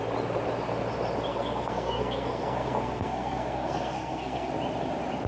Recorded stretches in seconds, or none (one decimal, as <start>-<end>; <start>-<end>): 0.0-1.3; 4.5-5.3

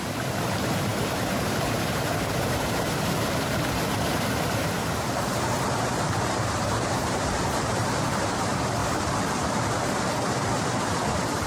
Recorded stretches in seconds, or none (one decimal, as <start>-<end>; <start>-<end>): 8.8-10.7

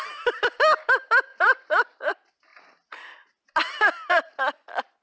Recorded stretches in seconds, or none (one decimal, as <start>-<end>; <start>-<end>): 0.0-1.3; 2.1-5.0

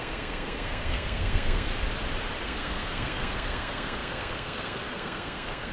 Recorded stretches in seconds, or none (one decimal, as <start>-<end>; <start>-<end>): 1.7-2.4

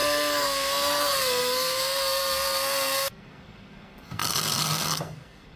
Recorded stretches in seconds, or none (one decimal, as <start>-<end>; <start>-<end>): none